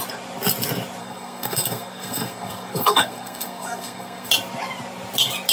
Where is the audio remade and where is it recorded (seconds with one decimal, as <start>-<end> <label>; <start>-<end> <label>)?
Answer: 0.0-1.0 recorded; 1.0-4.3 remade; 4.3-5.5 recorded